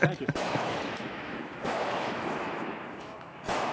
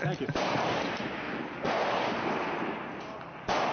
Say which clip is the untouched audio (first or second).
second